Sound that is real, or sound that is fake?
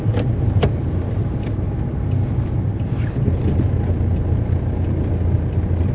real